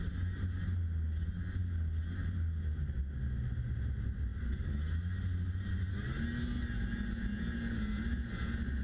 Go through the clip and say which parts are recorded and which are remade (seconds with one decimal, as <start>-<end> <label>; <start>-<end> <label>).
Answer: 0.0-8.8 recorded